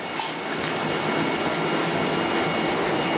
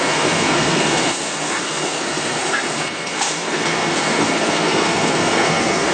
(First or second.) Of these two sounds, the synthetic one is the second